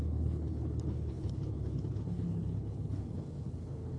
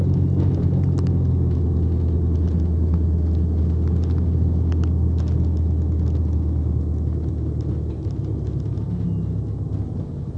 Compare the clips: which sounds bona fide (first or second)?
second